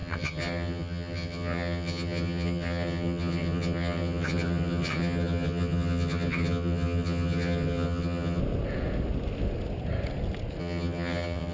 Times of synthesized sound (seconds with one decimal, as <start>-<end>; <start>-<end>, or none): 0.0-8.4; 10.6-11.5